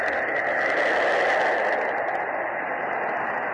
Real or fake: real